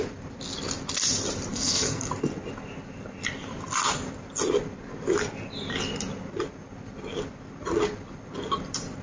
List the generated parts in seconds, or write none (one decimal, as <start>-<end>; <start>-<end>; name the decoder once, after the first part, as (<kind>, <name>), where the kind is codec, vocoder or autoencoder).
1.5-2.1 (codec, SNAC)